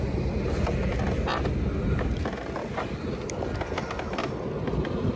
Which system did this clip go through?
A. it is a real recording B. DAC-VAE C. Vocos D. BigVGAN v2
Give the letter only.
A